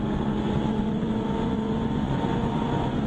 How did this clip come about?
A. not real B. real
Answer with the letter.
A